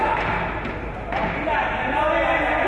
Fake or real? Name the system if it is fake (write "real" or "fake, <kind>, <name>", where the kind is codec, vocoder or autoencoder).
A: real